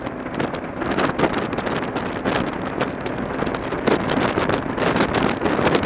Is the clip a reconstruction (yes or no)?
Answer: no